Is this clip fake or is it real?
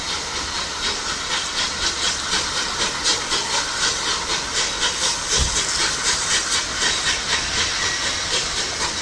real